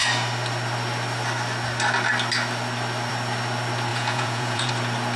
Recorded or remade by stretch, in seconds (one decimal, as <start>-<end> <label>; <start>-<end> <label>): 0.0-3.9 recorded; 3.9-4.7 remade; 4.7-5.2 recorded